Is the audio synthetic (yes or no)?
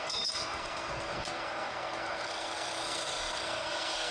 yes